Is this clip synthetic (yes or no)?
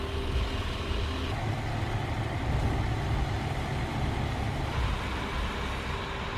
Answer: no